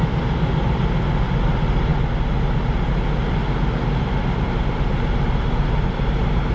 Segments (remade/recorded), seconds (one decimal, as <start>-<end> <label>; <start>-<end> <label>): 0.0-6.5 recorded